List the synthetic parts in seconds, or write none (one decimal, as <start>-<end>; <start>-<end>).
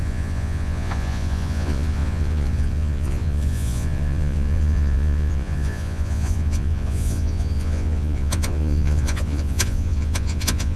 0.0-10.8